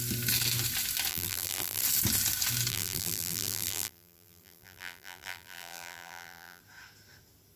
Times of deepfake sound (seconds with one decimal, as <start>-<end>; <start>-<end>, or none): 1.1-1.8; 2.7-6.6